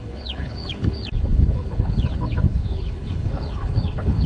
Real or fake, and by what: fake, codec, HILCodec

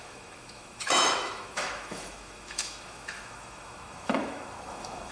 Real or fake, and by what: fake, autoencoder, DAC-VAE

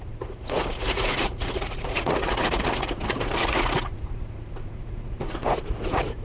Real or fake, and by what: fake, vocoder, Vocos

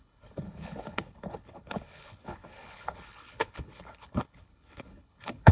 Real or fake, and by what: fake, codec, HILCodec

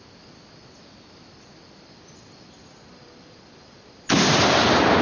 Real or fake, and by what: real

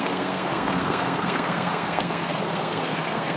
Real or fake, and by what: fake, codec, SNAC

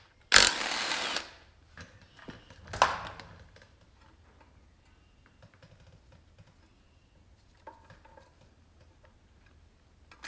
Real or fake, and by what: real